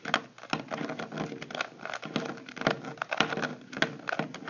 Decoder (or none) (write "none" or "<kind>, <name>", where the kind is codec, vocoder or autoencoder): none